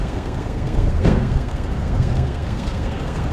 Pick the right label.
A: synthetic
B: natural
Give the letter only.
A